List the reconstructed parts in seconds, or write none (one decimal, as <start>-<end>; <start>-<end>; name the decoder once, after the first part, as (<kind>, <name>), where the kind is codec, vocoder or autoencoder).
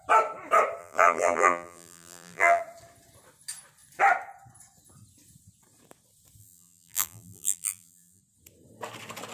0.8-2.6 (vocoder, BigVGAN v2); 6.4-8.2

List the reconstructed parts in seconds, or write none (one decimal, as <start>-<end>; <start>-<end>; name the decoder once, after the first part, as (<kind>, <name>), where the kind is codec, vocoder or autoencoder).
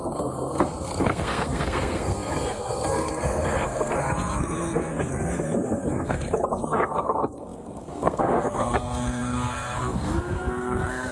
0.0-11.1 (codec, SNAC)